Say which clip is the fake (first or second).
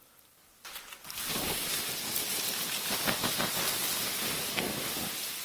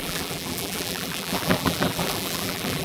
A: second